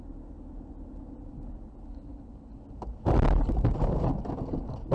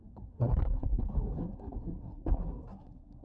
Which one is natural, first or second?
first